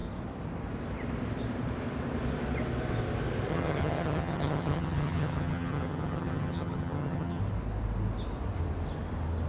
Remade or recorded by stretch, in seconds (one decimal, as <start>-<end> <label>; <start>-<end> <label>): 0.0-3.5 recorded; 3.5-7.4 remade; 7.4-9.5 recorded

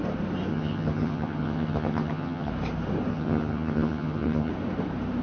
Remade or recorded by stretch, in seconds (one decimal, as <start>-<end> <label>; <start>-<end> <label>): 0.0-0.5 recorded; 0.5-2.5 remade; 2.5-3.1 recorded; 3.1-4.5 remade; 4.5-5.2 recorded

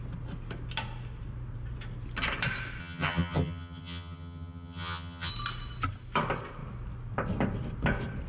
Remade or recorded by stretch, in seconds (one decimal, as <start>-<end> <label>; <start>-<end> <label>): 0.0-2.8 recorded; 2.8-5.3 remade; 5.3-8.3 recorded

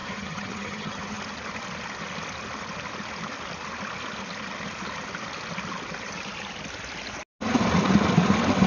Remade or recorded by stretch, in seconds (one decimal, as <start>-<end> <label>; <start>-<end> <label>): 0.0-1.2 remade; 1.2-8.7 recorded

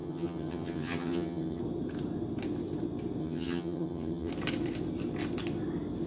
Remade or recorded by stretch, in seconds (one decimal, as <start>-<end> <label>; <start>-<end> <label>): 0.0-1.6 remade; 1.6-3.2 recorded; 3.2-4.3 remade; 4.3-6.1 recorded

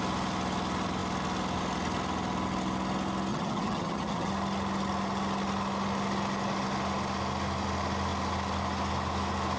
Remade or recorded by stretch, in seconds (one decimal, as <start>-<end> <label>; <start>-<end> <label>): 0.0-3.3 recorded; 3.3-4.3 remade; 4.3-9.6 recorded